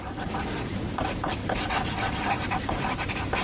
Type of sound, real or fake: real